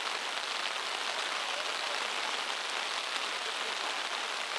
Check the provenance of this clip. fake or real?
real